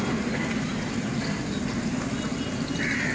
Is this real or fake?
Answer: real